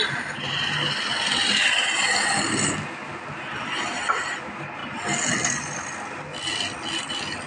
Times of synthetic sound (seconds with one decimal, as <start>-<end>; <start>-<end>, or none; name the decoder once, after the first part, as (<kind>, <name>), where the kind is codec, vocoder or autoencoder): none